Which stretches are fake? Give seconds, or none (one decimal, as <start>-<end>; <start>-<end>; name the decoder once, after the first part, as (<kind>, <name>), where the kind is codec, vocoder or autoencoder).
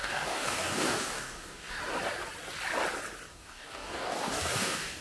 0.0-1.8 (codec, DAC); 3.3-5.0